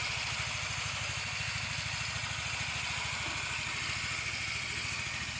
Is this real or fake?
real